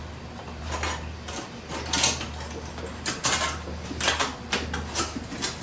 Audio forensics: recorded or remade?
recorded